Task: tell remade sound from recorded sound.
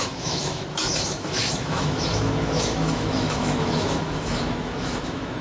remade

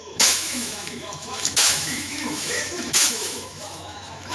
remade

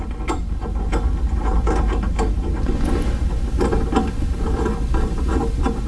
recorded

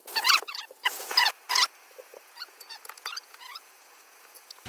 remade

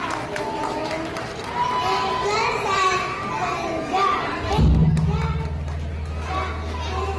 recorded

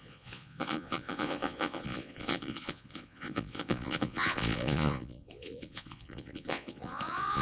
remade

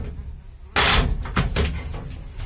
recorded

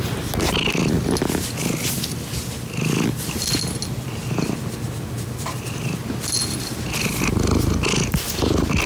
recorded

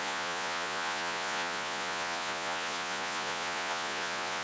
remade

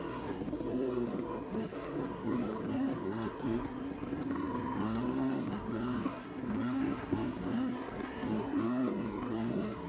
remade